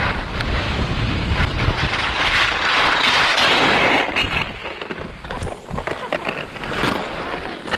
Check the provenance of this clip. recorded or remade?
recorded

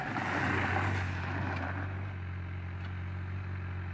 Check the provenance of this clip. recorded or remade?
recorded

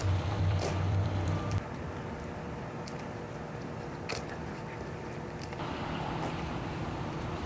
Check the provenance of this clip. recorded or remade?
remade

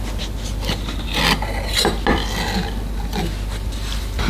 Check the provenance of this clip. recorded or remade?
recorded